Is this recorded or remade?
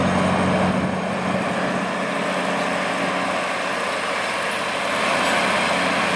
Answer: recorded